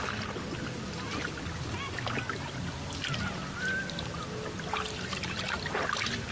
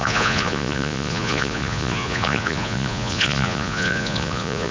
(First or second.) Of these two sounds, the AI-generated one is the second